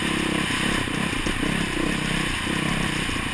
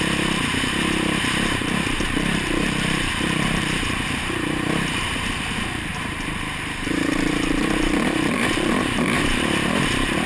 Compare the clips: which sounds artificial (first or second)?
second